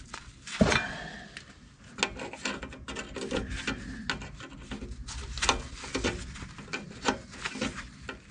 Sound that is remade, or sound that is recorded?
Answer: recorded